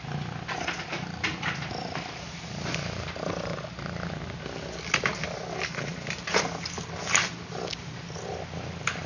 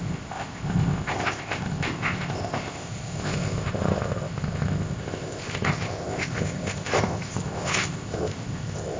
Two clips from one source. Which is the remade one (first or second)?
second